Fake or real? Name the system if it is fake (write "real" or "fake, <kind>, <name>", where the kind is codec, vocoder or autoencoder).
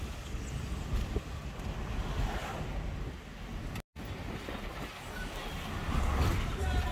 real